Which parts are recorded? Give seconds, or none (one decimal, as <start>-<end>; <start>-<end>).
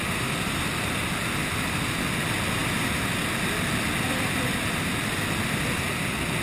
0.0-6.4